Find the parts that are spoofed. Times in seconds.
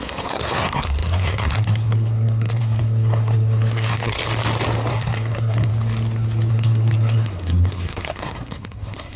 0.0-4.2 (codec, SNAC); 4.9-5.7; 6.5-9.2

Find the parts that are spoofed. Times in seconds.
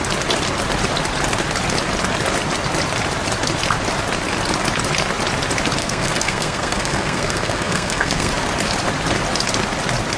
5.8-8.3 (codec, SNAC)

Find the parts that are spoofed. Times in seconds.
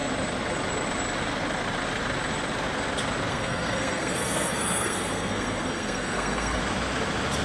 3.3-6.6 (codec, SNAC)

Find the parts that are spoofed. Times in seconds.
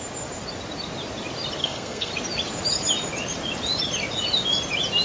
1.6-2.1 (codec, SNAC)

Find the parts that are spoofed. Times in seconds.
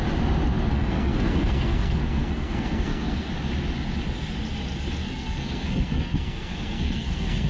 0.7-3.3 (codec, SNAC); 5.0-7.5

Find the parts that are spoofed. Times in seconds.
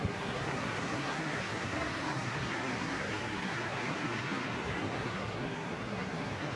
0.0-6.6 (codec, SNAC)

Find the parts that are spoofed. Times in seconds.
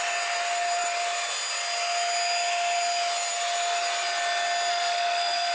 4.7-5.5 (codec, SNAC)